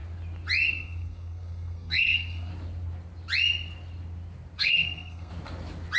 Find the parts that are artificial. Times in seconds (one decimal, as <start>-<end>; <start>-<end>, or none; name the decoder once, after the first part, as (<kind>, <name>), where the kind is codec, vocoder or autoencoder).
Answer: 0.7-2.5 (codec, SNAC); 4.6-5.3